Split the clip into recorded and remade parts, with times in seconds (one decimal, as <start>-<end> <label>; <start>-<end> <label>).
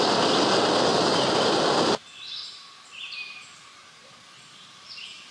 0.0-5.3 recorded